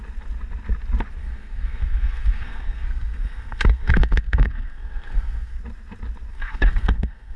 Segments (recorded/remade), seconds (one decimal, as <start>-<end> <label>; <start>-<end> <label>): 0.0-1.2 recorded; 1.2-5.6 remade; 5.6-6.3 recorded; 6.3-7.4 remade